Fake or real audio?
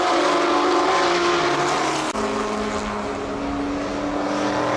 real